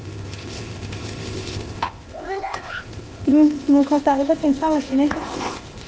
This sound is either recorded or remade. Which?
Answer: remade